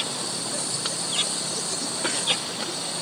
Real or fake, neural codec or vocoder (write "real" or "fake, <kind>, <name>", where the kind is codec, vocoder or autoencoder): fake, vocoder, BigVGAN v2